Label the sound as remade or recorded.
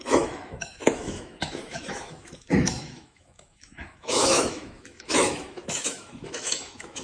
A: remade